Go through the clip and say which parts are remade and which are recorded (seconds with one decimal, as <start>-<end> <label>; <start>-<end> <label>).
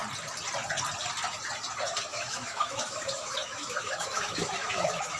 0.0-2.1 recorded; 2.1-5.2 remade